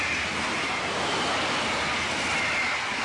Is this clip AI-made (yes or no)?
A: no